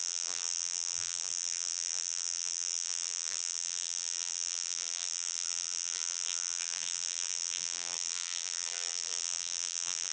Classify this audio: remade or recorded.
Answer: remade